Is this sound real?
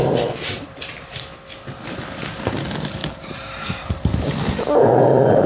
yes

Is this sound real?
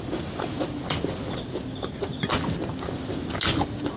yes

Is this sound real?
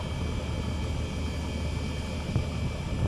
yes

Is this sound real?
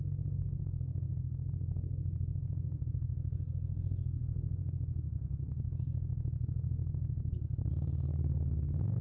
no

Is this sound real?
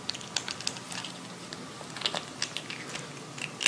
yes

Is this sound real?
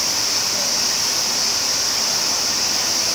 yes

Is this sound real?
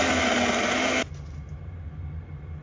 yes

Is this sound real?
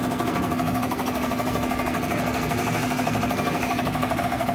no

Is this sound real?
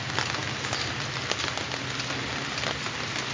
yes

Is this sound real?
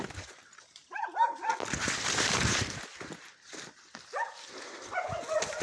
yes